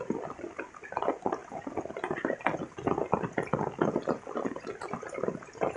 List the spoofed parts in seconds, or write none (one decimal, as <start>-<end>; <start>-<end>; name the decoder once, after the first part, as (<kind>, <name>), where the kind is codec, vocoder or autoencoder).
none